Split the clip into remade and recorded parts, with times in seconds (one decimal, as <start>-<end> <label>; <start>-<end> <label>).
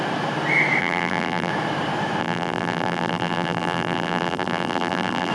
0.0-0.8 recorded; 0.8-1.5 remade; 1.5-2.2 recorded; 2.2-5.3 remade